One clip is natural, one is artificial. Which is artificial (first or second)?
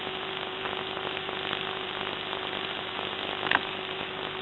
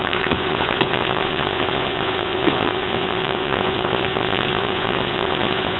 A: second